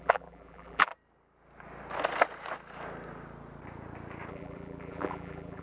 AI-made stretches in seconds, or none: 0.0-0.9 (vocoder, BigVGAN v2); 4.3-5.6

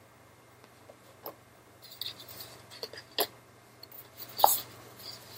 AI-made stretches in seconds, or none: none